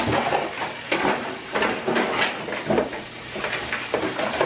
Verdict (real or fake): real